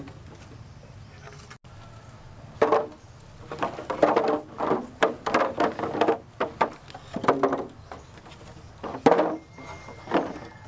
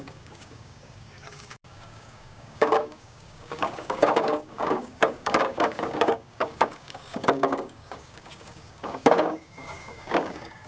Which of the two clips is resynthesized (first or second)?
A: second